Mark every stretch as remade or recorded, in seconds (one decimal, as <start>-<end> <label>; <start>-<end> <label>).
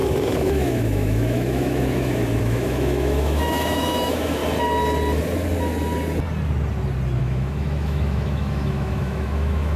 0.0-4.4 remade; 4.4-7.2 recorded; 7.2-9.8 remade